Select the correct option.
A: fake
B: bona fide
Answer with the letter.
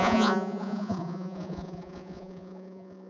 A